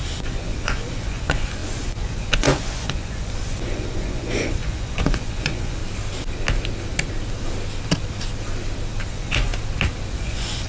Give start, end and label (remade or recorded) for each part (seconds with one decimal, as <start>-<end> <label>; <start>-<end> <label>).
0.0-5.8 remade; 5.8-9.1 recorded; 9.1-9.5 remade; 9.5-10.1 recorded; 10.1-10.7 remade